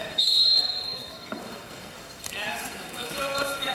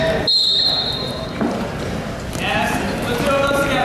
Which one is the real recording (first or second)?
second